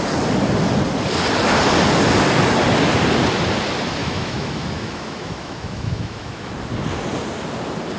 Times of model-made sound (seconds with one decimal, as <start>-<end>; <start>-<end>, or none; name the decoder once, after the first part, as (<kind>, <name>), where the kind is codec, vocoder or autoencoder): 4.0-6.5 (autoencoder, DAC-VAE)